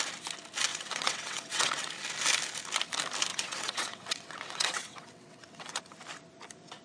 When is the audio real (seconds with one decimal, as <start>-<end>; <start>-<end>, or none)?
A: 0.0-0.7; 1.9-3.3; 5.8-6.8